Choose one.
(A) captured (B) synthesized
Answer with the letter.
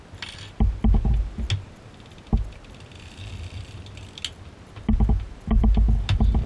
A